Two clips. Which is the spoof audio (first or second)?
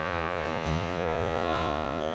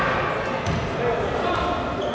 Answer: first